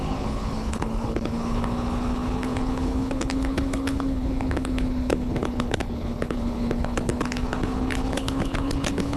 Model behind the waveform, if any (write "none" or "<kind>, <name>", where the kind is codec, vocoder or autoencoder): codec, HILCodec